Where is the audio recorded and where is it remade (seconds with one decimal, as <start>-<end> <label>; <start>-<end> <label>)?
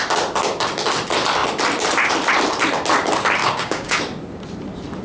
0.0-3.4 recorded; 3.4-4.0 remade; 4.0-5.0 recorded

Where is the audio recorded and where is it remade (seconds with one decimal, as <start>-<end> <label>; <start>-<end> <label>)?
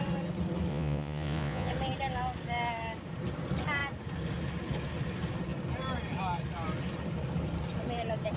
0.0-0.7 recorded; 0.7-1.7 remade; 1.7-8.4 recorded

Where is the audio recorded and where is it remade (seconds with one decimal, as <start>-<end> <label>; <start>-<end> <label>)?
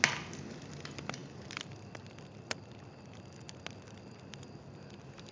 0.0-5.3 recorded